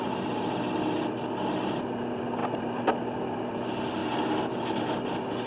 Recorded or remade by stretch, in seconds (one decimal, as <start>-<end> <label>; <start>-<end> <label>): 0.0-5.5 recorded

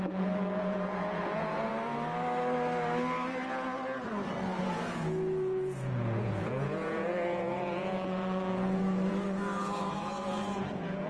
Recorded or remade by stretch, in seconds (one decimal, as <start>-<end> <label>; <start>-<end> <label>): 0.0-1.7 remade; 1.7-4.6 recorded; 4.6-11.1 remade

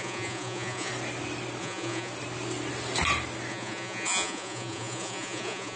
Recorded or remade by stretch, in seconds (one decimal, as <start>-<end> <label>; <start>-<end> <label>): 0.0-0.9 remade; 0.9-1.6 recorded; 1.6-2.1 remade; 2.1-3.5 recorded; 3.5-5.8 remade

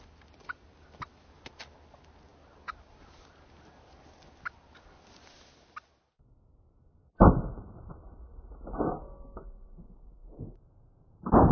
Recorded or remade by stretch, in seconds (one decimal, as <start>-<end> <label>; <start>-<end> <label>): 0.0-11.5 recorded